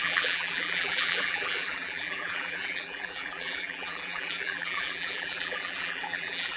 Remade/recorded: remade